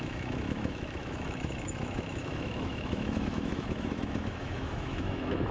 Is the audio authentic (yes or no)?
no